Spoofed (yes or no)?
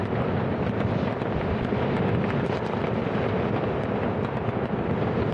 no